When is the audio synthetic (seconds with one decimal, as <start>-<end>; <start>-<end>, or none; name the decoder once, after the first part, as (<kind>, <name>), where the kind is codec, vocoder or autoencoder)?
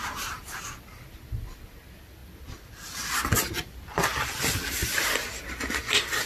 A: 2.2-6.3 (vocoder, BigVGAN v2)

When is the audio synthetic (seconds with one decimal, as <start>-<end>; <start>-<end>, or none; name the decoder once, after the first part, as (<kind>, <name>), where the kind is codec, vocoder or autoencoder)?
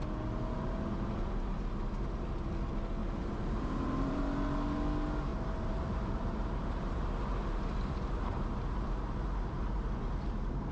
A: 3.0-4.2 (vocoder, BigVGAN v2); 5.3-6.6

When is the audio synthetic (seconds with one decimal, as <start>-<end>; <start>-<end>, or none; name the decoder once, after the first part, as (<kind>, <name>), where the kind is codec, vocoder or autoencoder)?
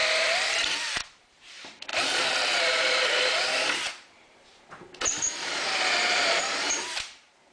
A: 0.0-7.5 (vocoder, BigVGAN v2)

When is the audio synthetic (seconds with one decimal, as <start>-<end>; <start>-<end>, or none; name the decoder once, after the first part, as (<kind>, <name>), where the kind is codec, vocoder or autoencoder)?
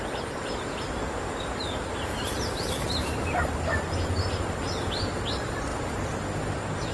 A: 0.0-6.9 (vocoder, BigVGAN v2)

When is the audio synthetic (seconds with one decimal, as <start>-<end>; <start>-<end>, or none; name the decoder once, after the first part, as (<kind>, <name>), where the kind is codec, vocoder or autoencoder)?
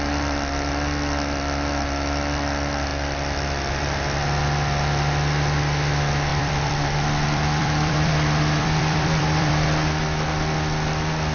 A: 2.9-3.7 (vocoder, BigVGAN v2); 6.3-9.5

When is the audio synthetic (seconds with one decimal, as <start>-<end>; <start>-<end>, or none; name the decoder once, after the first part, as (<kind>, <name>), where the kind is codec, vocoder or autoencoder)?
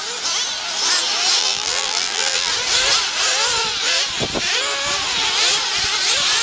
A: 1.4-2.5 (vocoder, BigVGAN v2)